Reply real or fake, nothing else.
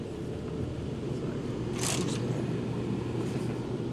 real